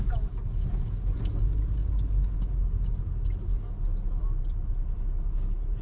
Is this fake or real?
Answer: real